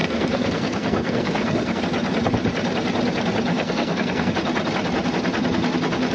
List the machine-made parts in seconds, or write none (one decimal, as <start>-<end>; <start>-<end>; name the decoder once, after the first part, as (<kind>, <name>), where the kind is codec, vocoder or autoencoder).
0.0-1.8 (codec, SNAC); 3.5-4.3